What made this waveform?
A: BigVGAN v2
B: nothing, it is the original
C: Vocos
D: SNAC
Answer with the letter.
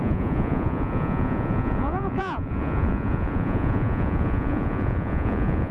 C